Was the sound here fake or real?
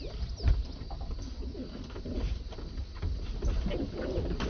real